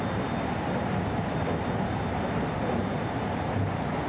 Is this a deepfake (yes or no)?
no